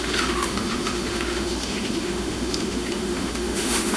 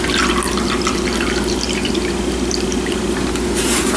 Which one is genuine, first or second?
second